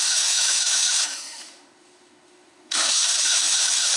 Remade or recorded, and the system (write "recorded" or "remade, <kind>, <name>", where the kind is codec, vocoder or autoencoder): remade, autoencoder, DAC-VAE